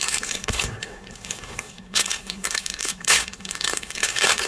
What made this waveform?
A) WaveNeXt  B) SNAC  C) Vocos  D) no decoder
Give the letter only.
B